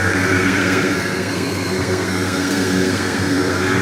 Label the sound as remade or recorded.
remade